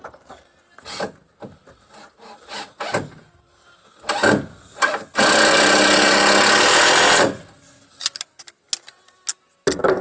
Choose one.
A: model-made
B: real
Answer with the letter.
B